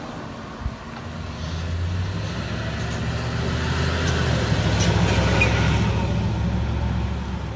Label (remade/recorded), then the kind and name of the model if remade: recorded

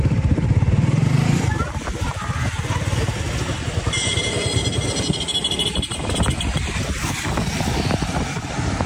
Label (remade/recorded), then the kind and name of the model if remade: remade, vocoder, BigVGAN v2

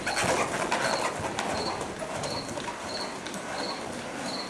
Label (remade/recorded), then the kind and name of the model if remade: recorded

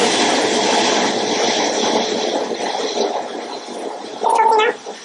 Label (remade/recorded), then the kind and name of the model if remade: recorded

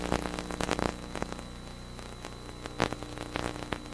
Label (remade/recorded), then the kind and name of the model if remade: recorded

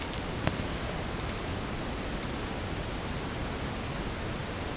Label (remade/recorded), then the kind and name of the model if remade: recorded